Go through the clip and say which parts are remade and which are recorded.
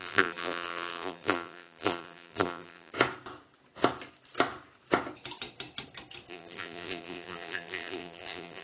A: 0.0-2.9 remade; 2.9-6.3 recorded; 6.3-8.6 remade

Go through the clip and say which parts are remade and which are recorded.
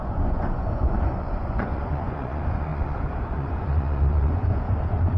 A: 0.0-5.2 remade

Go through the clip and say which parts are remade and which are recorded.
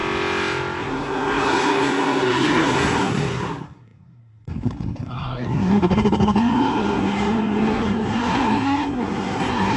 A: 0.0-0.8 recorded; 0.8-9.8 remade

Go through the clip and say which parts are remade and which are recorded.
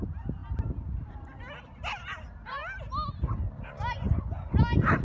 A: 0.0-5.0 recorded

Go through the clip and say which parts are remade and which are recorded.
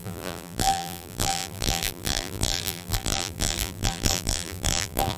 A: 0.0-5.2 remade